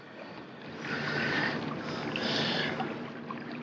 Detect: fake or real real